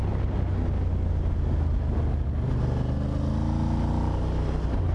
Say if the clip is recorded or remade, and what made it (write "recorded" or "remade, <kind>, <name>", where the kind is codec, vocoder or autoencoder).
recorded